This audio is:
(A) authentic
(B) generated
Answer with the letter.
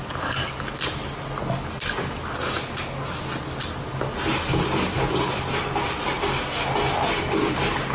A